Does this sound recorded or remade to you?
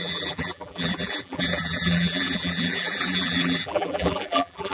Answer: remade